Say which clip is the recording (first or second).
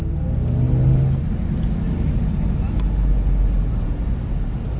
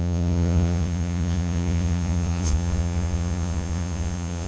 first